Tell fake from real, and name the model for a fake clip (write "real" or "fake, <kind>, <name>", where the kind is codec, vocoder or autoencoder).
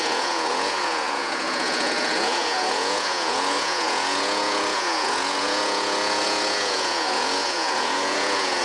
fake, vocoder, Vocos